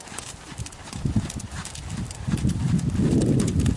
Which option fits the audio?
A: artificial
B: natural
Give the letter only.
B